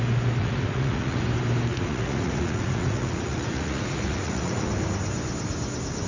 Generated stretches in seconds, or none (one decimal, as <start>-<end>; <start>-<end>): 0.4-1.2; 1.7-4.7